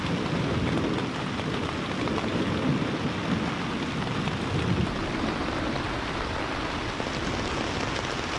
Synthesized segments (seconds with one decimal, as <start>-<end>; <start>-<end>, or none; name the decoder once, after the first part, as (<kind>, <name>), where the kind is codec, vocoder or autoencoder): none

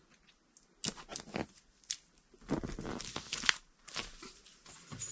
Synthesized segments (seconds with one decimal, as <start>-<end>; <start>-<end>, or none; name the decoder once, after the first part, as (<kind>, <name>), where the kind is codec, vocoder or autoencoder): none

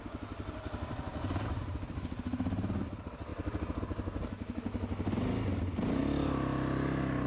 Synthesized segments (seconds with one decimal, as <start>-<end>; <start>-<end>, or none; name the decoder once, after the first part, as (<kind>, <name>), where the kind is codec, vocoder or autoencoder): none